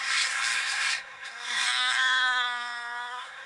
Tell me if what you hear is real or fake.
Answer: fake